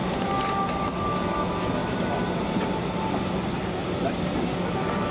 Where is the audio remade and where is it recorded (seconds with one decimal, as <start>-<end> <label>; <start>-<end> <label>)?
0.0-0.6 remade; 0.6-1.8 recorded; 1.8-2.8 remade; 2.8-5.1 recorded